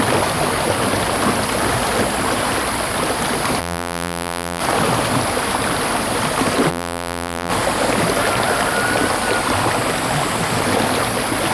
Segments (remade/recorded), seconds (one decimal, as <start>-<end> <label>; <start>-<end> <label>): 0.0-3.6 recorded; 3.6-4.6 remade; 4.6-6.7 recorded; 6.7-7.5 remade; 7.5-11.5 recorded